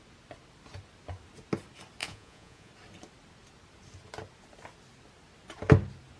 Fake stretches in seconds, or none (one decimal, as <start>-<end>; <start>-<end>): 2.0-2.7